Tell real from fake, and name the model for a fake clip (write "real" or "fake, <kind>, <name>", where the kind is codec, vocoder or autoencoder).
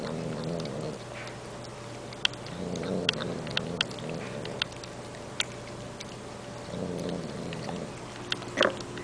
real